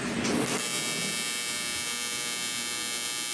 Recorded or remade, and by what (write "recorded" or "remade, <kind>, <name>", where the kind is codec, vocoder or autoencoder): recorded